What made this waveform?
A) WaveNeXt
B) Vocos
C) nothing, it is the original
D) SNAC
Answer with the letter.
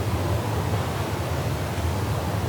C